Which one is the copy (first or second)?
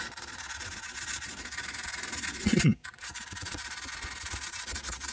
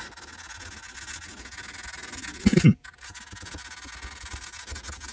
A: first